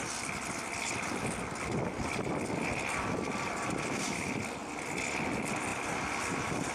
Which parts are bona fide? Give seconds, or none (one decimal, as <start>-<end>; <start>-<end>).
0.0-6.7